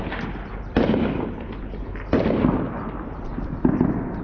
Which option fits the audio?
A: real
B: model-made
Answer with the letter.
A